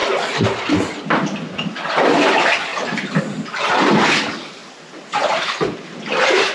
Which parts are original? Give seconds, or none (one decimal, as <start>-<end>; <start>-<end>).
0.0-6.5